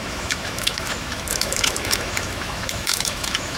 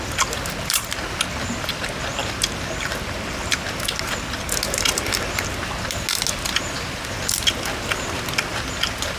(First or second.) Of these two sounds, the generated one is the first